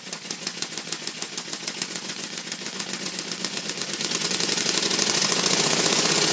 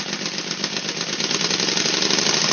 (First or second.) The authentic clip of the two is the second